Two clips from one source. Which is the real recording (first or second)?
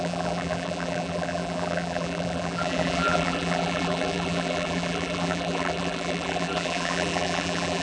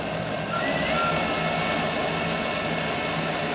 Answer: second